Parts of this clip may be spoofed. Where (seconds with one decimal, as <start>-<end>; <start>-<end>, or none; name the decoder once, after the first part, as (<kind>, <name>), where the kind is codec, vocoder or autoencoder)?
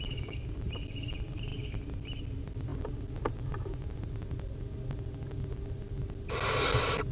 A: none